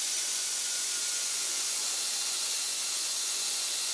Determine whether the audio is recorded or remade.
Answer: remade